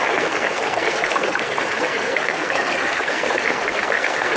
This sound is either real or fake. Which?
fake